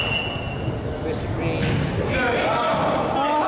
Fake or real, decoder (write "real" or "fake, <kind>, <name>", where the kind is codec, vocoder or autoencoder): real